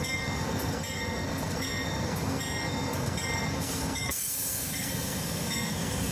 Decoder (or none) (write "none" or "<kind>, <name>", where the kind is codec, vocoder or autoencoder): codec, SNAC